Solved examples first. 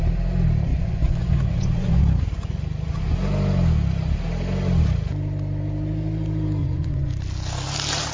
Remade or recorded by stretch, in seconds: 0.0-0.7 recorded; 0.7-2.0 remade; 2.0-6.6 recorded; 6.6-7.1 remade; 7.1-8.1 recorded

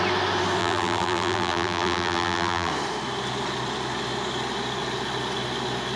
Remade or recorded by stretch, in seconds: 0.0-0.6 recorded; 0.6-2.7 remade; 2.7-6.0 recorded

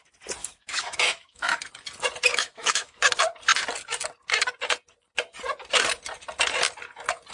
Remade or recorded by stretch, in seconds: 0.0-0.4 recorded; 0.4-1.6 remade; 1.6-2.3 recorded; 2.3-3.0 remade; 3.0-7.3 recorded

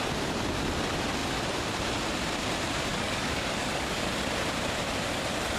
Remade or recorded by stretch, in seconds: 0.0-2.9 recorded; 2.9-4.1 remade; 4.1-5.6 recorded